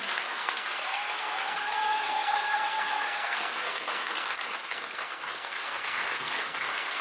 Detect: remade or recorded remade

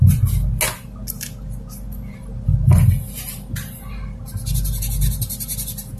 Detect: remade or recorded recorded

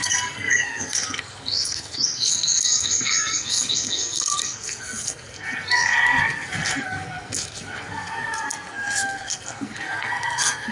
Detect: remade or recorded remade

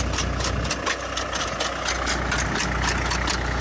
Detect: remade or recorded recorded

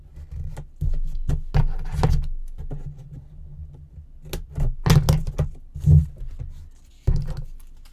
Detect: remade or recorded recorded